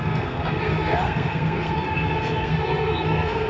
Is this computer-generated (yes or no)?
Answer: yes